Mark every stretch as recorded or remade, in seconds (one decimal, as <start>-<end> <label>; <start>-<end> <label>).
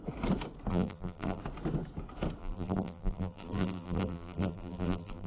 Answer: 0.0-0.7 recorded; 0.7-1.4 remade; 1.4-2.4 recorded; 2.4-5.3 remade